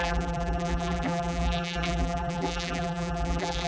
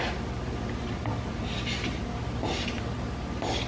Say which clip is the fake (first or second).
first